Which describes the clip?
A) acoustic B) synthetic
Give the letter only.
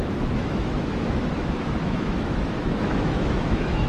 B